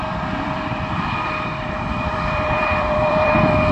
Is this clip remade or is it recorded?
remade